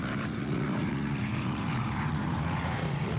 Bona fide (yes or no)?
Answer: no